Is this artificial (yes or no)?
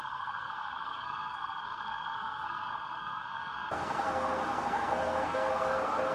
yes